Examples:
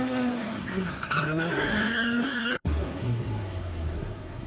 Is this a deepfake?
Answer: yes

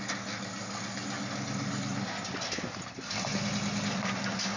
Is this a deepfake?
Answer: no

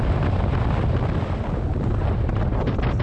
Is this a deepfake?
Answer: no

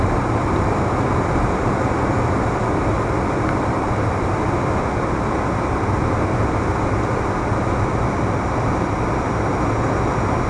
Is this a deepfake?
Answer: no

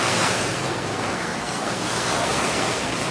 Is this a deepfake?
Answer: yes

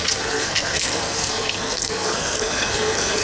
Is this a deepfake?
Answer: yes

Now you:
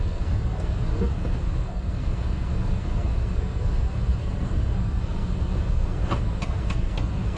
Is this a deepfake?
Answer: yes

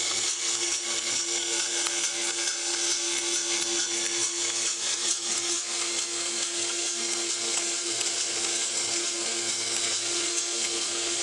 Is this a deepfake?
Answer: yes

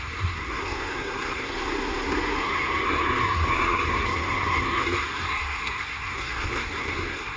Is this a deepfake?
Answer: yes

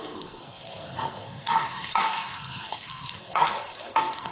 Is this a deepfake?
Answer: yes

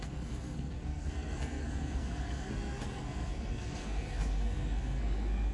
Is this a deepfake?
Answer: yes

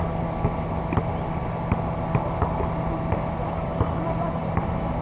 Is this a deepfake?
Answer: no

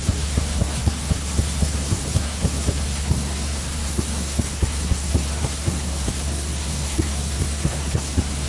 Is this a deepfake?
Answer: yes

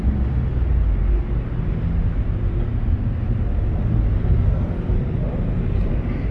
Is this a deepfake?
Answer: no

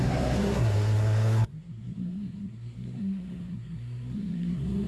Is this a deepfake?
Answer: yes